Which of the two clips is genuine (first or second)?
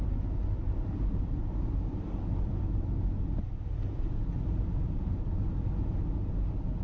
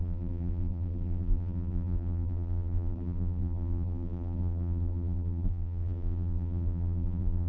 first